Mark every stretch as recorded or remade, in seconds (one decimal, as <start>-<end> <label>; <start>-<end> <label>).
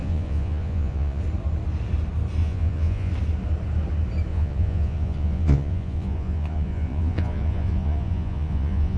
0.0-1.2 remade; 1.2-2.4 recorded; 2.4-3.1 remade; 3.1-4.3 recorded; 4.3-9.0 remade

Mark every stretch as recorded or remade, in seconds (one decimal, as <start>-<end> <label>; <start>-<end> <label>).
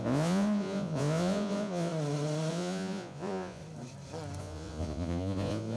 0.0-1.9 remade; 1.9-2.5 recorded; 2.5-3.6 remade; 3.6-4.4 recorded; 4.4-5.8 remade